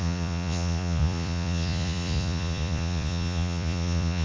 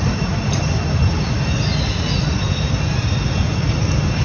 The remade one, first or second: first